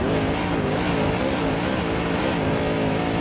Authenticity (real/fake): real